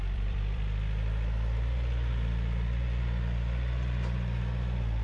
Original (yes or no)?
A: no